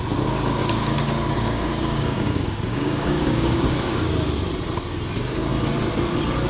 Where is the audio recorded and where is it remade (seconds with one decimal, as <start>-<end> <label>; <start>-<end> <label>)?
0.0-0.6 recorded; 0.6-4.1 remade; 4.1-6.5 recorded